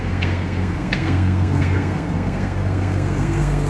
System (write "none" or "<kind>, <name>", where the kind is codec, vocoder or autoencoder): codec, SNAC